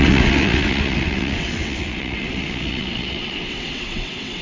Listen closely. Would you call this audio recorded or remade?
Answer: remade